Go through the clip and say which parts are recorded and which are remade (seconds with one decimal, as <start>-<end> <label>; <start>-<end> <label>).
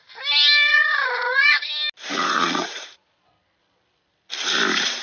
0.0-0.7 recorded; 0.7-1.7 remade; 1.7-2.1 recorded; 2.1-3.1 remade; 3.1-5.0 recorded